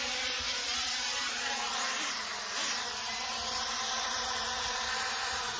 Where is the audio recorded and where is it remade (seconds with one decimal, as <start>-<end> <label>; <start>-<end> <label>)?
0.0-2.3 remade; 2.3-3.0 recorded; 3.0-5.6 remade